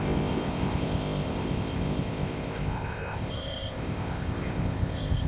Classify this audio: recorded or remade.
remade